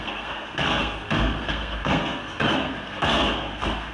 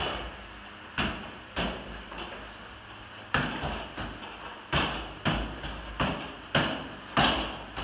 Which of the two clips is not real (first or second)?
first